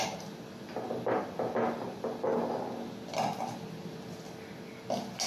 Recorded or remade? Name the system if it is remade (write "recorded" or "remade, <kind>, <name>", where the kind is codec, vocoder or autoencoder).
recorded